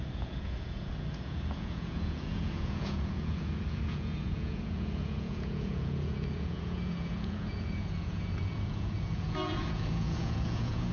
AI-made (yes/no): yes